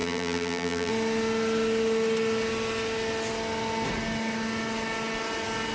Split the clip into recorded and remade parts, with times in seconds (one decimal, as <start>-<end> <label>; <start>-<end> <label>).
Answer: 0.0-0.9 remade; 0.9-5.7 recorded